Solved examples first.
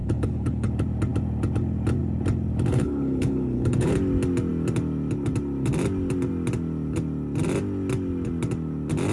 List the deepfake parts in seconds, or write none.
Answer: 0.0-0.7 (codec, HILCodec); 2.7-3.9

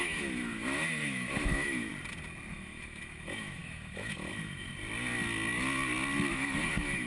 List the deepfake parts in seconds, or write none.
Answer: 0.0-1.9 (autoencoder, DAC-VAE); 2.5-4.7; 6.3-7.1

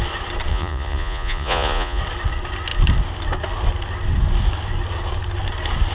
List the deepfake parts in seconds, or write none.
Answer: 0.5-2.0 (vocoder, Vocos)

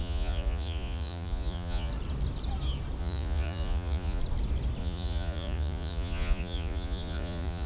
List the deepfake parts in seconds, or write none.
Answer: 0.0-1.9 (vocoder, Vocos); 3.0-4.2; 4.8-7.7

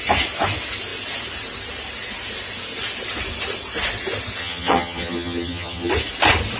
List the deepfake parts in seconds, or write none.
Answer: 4.4-5.9 (vocoder, HiFi-GAN)

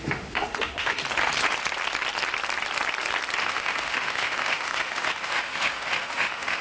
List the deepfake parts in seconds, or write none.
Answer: 0.0-1.0 (autoencoder, DAC-VAE); 3.4-6.6

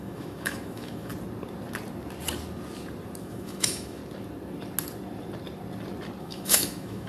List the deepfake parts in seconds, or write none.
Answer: 0.0-1.1 (autoencoder, DAC-VAE); 3.2-4.0; 6.2-7.1